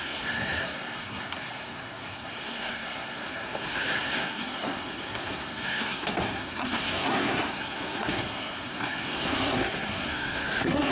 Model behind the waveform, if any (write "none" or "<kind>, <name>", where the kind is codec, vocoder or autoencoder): codec, SNAC